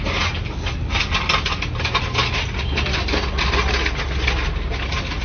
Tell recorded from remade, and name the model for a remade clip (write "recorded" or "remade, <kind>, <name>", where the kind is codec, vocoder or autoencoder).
recorded